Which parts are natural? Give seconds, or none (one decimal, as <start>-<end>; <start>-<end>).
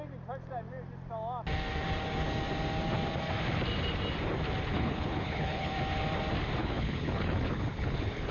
0.0-4.7; 5.7-6.6